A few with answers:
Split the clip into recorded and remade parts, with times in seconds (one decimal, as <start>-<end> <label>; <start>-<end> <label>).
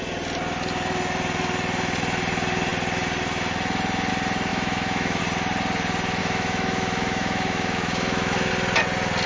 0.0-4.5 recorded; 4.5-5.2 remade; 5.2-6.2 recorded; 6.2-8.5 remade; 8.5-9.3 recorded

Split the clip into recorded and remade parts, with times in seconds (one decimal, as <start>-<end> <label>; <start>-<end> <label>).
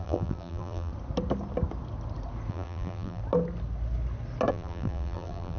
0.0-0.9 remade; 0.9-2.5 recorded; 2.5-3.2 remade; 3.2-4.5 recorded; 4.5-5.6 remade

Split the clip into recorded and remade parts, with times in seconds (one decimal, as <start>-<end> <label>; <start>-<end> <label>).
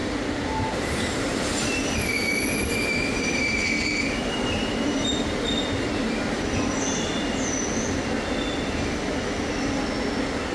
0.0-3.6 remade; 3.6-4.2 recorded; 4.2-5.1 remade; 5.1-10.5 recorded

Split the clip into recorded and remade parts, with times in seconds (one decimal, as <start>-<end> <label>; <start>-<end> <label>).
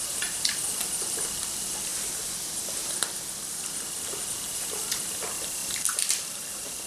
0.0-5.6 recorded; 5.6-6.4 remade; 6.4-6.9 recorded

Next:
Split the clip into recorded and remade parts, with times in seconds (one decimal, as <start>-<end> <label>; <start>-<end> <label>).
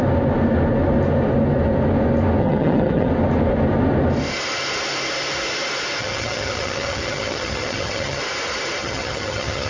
0.0-2.4 recorded; 2.4-3.1 remade; 3.1-6.0 recorded; 6.0-8.2 remade; 8.2-8.8 recorded; 8.8-9.7 remade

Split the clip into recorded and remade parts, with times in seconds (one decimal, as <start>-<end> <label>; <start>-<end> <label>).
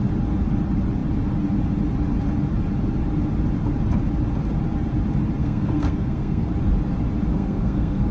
0.0-5.4 recorded; 5.4-6.5 remade; 6.5-7.3 recorded; 7.3-8.1 remade